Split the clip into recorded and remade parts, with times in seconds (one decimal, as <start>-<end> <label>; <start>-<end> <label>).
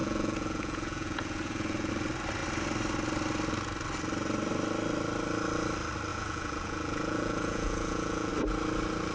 0.0-1.9 remade; 1.9-6.1 recorded; 6.1-8.3 remade; 8.3-9.1 recorded